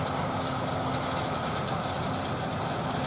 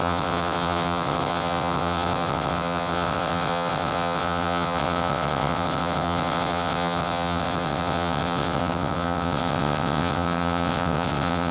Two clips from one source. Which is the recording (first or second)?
first